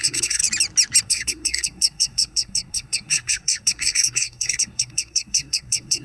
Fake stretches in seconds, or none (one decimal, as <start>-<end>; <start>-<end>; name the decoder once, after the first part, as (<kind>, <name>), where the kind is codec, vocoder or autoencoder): 0.0-0.4 (codec, SNAC); 1.0-6.0